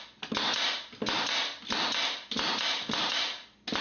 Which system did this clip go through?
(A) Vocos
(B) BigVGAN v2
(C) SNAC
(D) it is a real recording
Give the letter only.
D